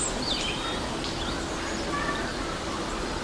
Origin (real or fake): fake